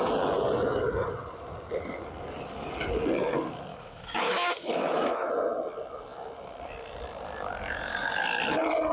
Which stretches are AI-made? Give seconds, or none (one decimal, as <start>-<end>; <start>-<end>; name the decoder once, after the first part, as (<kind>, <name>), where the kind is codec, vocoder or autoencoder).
3.7-5.3 (autoencoder, DAC-VAE)